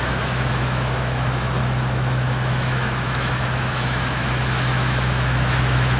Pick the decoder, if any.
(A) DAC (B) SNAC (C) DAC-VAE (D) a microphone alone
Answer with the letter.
C